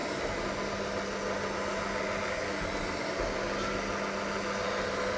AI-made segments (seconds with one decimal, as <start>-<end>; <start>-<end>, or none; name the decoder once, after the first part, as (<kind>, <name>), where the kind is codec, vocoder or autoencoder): none